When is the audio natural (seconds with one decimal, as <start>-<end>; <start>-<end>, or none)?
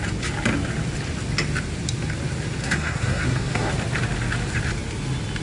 0.0-2.6; 3.7-5.4